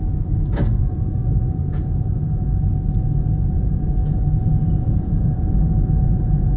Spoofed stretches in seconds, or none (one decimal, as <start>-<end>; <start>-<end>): 0.0-6.6